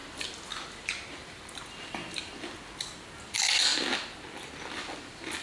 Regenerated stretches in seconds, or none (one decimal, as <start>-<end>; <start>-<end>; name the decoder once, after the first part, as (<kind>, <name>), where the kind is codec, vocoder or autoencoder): none